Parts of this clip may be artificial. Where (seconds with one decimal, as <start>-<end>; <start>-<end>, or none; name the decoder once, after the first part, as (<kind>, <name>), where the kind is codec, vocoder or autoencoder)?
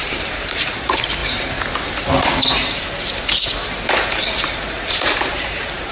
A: 0.0-1.2 (vocoder, BigVGAN v2); 3.9-5.9